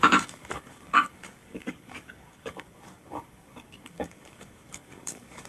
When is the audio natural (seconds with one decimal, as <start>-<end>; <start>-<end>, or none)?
none